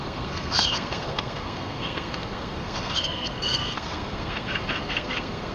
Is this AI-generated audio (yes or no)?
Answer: yes